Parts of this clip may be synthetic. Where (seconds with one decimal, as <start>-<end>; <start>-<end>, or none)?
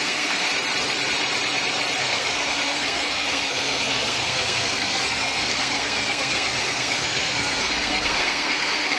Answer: 0.0-0.5; 2.0-9.0